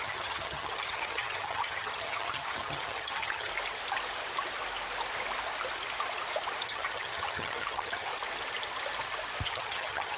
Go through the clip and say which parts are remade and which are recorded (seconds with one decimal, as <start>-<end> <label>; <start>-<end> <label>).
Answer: 0.0-3.5 remade; 3.5-6.6 recorded; 6.6-8.1 remade; 8.1-9.5 recorded; 9.5-10.2 remade